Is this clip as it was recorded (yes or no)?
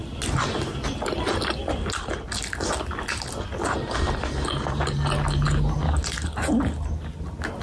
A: yes